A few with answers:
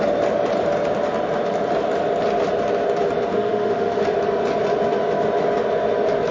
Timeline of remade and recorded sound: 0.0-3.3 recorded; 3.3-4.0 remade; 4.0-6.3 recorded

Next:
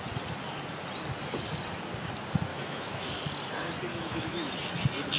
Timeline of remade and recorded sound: 0.0-2.5 recorded; 2.5-3.1 remade; 3.1-3.9 recorded; 3.9-4.5 remade; 4.5-5.2 recorded

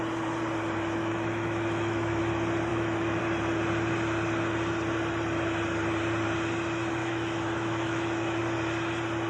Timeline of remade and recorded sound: 0.0-1.0 recorded; 1.0-2.2 remade; 2.2-2.7 recorded; 2.7-3.2 remade; 3.2-7.0 recorded; 7.0-8.4 remade; 8.4-9.3 recorded